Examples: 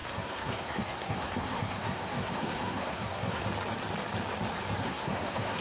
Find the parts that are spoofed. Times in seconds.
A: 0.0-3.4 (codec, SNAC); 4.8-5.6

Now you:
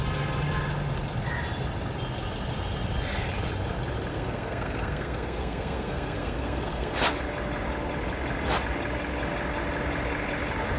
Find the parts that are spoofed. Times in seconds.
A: 4.1-6.9 (codec, SNAC)

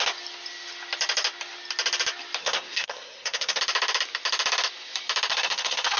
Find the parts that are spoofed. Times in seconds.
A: 2.4-3.6 (codec, SNAC); 5.3-6.0

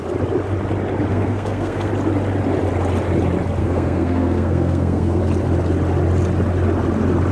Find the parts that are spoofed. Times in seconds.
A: 1.1-1.9 (codec, SNAC); 3.6-5.2

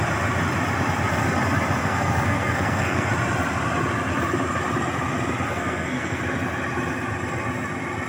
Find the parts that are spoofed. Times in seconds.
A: 1.8-3.1 (codec, SNAC); 5.5-6.2

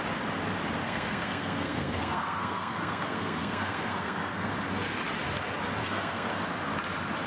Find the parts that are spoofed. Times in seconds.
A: 0.8-4.5 (codec, SNAC); 5.8-6.3